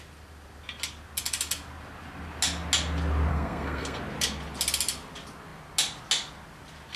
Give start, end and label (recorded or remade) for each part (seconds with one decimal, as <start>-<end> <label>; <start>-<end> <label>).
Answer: 0.0-3.3 recorded; 3.3-4.0 remade; 4.0-7.0 recorded